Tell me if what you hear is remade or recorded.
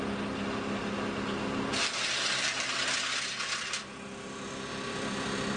recorded